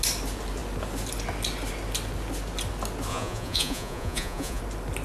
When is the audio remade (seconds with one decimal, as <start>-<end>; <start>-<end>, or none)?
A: 3.1-4.6